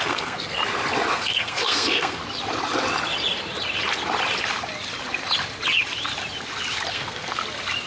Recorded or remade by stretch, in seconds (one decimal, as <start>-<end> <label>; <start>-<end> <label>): 0.0-0.6 remade; 0.6-1.1 recorded; 1.1-2.2 remade; 2.2-6.9 recorded; 6.9-7.4 remade; 7.4-7.9 recorded